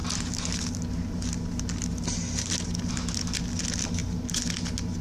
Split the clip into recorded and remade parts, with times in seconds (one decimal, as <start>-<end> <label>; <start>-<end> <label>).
0.0-2.9 remade; 2.9-5.0 recorded